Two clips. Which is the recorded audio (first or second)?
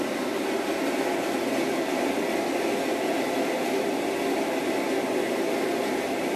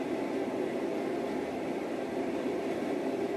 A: first